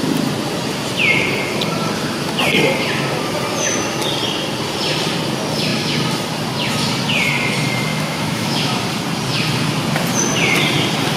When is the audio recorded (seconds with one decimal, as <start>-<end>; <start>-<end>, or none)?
0.0-7.9; 8.8-11.2